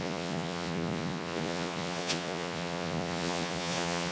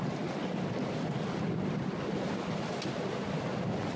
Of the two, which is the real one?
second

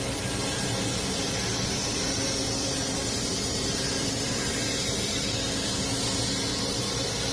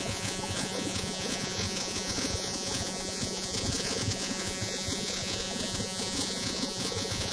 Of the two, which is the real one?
first